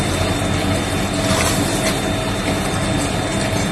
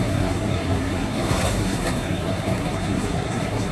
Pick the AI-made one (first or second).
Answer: second